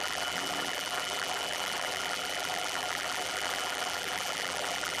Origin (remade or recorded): remade